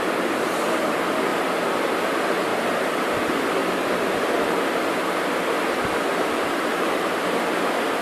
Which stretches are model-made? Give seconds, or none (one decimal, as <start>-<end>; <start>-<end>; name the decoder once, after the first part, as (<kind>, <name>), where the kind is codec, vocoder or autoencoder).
2.5-3.1 (vocoder, BigVGAN v2); 6.1-7.3